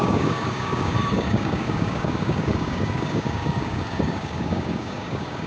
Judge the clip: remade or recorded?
remade